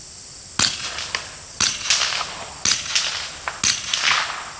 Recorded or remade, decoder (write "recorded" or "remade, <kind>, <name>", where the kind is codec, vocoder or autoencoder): recorded